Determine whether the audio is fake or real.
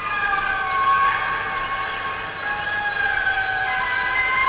real